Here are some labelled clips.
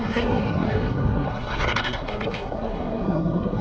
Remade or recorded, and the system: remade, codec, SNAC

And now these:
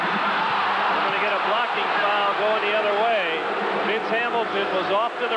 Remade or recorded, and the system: recorded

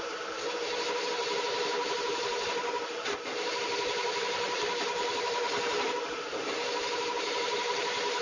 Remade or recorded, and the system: remade, vocoder, BigVGAN v2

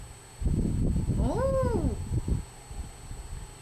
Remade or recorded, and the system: recorded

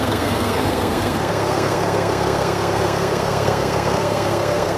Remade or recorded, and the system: remade, codec, SNAC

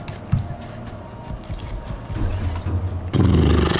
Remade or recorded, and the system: recorded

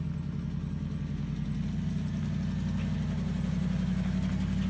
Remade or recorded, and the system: recorded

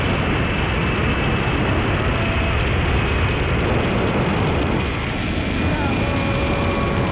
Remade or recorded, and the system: recorded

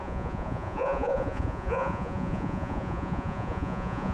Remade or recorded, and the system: remade, vocoder, Vocos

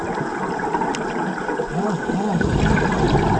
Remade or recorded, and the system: recorded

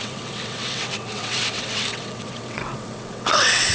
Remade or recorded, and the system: remade, vocoder, WaveNeXt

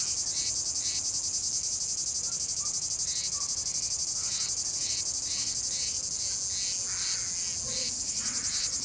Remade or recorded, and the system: recorded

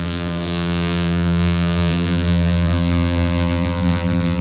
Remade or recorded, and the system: remade, vocoder, BigVGAN v2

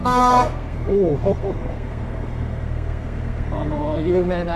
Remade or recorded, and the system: remade, codec, SNAC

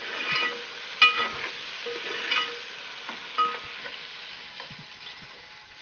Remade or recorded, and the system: recorded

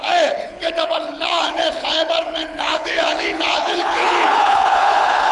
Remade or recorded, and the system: remade, codec, HILCodec